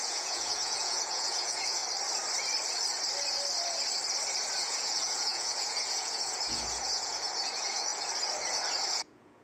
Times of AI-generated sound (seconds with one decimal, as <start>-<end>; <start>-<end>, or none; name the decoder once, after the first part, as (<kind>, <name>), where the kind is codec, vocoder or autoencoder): 0.0-1.8 (vocoder, Vocos); 4.6-7.9; 8.9-9.4